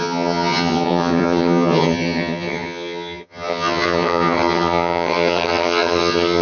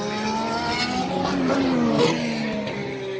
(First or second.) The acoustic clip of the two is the second